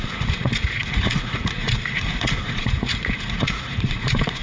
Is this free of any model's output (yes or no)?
no